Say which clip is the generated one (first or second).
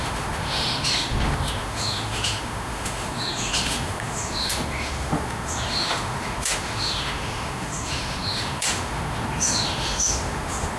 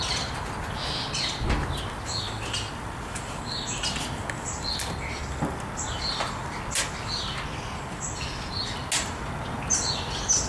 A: first